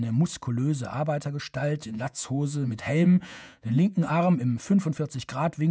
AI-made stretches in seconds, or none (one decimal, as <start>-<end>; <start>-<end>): 1.8-4.1

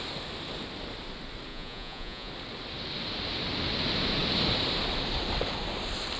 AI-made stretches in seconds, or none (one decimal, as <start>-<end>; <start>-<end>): 1.5-2.3